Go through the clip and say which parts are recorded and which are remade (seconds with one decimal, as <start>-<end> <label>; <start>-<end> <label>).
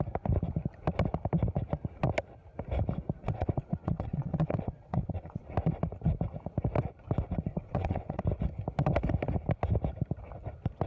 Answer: 0.0-3.2 recorded; 3.2-5.4 remade; 5.4-7.5 recorded; 7.5-8.2 remade; 8.2-10.9 recorded